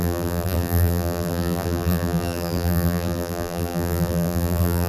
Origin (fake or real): fake